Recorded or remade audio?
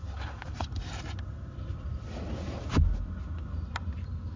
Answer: recorded